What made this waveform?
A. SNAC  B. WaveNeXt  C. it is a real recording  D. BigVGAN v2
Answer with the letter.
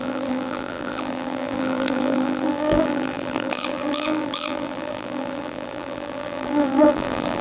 D